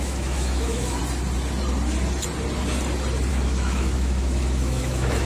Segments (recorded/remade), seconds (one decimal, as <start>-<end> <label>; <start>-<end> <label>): 0.0-1.0 remade; 1.0-3.3 recorded; 3.3-5.2 remade